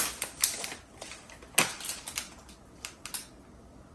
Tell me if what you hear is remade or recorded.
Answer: recorded